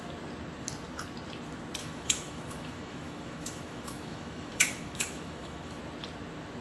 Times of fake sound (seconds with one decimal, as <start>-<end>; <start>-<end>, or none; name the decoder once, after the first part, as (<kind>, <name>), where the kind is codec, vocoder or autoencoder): 1.8-5.8 (autoencoder, DAC-VAE)